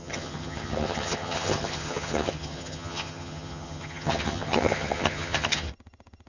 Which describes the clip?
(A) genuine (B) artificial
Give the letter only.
B